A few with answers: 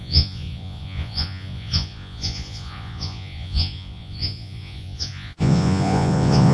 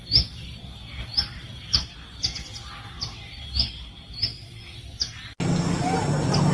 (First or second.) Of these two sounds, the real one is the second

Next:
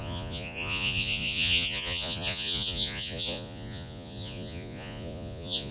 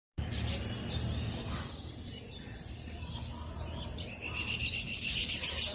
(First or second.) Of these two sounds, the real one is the second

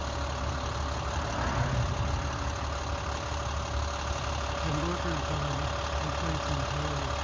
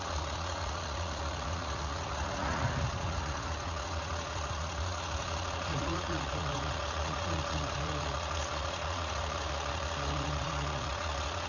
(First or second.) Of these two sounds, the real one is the first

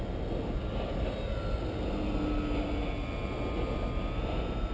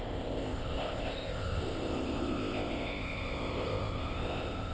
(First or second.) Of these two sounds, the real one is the first